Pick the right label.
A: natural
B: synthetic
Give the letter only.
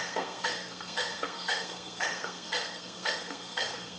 B